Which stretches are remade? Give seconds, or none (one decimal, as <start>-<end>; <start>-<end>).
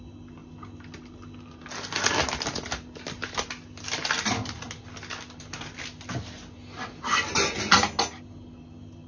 none